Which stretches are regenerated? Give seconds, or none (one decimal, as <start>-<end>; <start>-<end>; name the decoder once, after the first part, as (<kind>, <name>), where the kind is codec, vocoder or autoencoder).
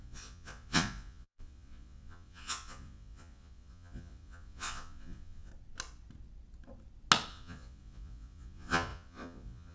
0.0-5.5 (vocoder, Vocos); 7.3-9.7